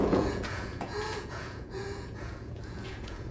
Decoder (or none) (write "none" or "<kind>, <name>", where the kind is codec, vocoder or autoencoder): vocoder, Vocos